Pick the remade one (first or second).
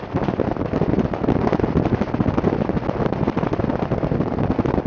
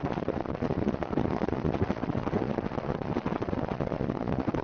second